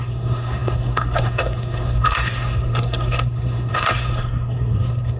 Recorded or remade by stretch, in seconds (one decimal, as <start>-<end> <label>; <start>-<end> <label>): 0.0-5.2 remade